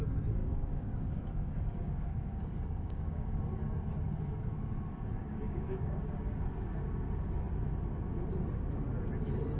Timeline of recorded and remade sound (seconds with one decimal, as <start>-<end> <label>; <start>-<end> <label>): 0.0-0.4 recorded; 0.4-3.4 remade; 3.4-5.2 recorded; 5.2-6.5 remade; 6.5-9.6 recorded